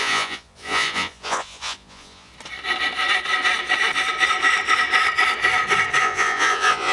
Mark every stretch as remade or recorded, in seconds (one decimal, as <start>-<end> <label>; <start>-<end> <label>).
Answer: 0.0-2.3 remade; 2.3-6.0 recorded; 6.0-6.9 remade